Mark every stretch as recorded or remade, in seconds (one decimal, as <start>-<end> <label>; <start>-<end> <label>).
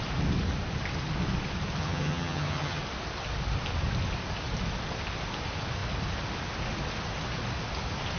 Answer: 0.0-1.8 recorded; 1.8-2.8 remade; 2.8-8.2 recorded